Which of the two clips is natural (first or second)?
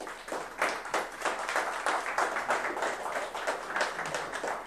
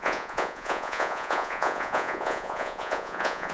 first